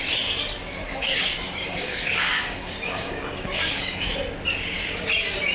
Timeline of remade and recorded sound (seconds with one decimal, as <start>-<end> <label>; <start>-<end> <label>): 0.0-0.8 recorded; 0.8-4.1 remade; 4.1-5.5 recorded